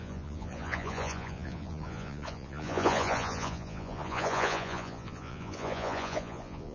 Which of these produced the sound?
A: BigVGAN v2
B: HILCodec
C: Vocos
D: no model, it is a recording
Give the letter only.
C